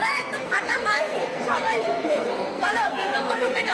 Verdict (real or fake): fake